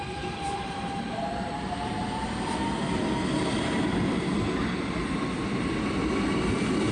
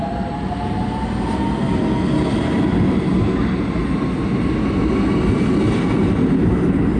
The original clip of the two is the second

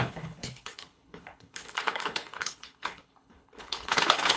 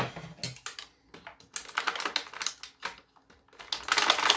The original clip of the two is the second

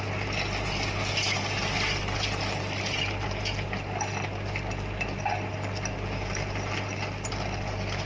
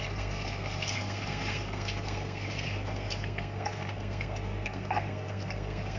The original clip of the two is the first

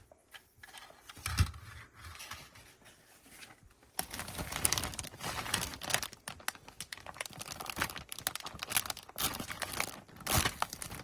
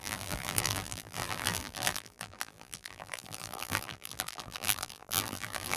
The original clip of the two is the first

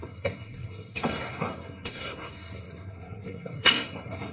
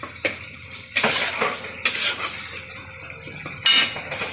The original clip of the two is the second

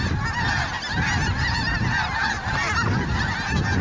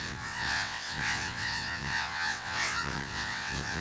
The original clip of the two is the first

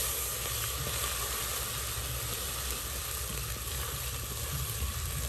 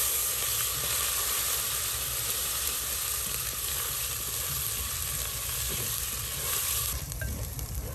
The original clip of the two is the first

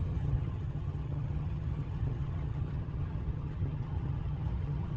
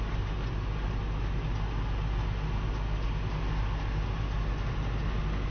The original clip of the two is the second